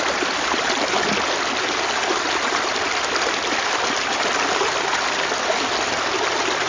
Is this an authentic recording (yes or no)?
yes